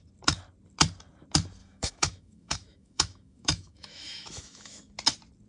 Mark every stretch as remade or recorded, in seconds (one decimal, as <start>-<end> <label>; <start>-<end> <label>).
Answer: 0.0-1.6 recorded; 1.6-4.9 remade; 4.9-5.5 recorded